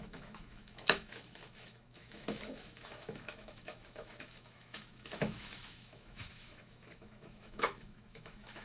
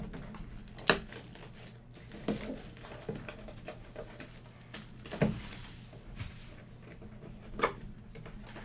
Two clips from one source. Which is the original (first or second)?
second